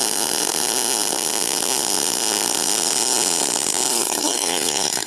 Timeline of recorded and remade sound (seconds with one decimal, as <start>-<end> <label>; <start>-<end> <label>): 0.0-3.9 recorded; 3.9-5.1 remade